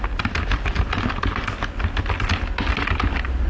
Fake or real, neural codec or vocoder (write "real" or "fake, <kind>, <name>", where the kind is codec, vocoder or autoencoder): real